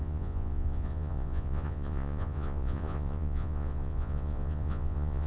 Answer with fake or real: fake